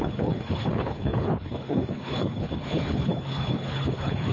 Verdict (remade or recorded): remade